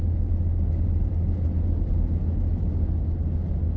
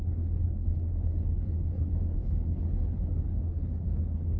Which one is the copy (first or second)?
second